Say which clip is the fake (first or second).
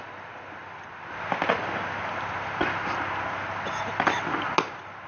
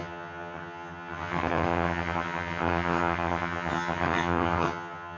second